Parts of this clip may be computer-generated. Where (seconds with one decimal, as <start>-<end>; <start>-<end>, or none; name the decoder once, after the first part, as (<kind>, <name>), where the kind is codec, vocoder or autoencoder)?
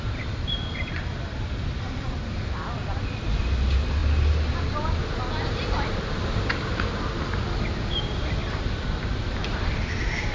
0.0-4.0 (vocoder, BigVGAN v2); 7.9-10.3